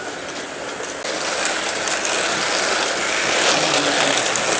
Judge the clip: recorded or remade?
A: recorded